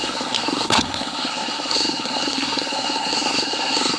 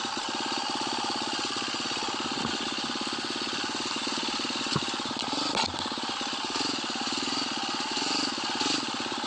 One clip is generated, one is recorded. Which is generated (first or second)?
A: first